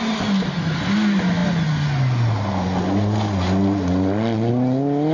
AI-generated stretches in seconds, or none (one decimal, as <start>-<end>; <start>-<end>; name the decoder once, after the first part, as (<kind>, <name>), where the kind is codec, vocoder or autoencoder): none